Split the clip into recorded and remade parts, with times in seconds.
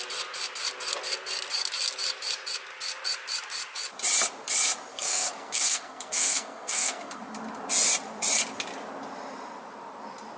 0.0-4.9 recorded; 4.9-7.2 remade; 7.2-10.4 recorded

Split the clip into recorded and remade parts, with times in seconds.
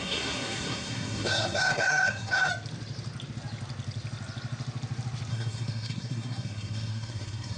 0.0-2.5 remade; 2.5-5.3 recorded; 5.3-7.6 remade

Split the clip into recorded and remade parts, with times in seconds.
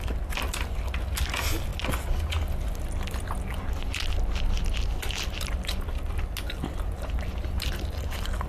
0.0-8.5 recorded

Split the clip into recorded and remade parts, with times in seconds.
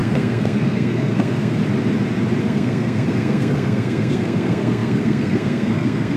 0.0-1.6 remade; 1.6-2.4 recorded; 2.4-6.2 remade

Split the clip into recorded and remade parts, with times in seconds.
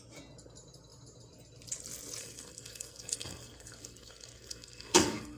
0.0-2.2 recorded; 2.2-5.4 remade